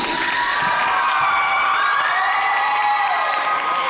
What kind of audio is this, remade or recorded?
remade